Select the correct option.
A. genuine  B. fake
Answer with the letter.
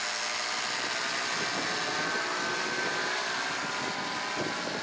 A